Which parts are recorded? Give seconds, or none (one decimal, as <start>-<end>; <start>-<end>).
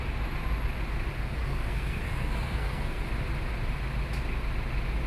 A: 0.0-1.4; 3.0-5.1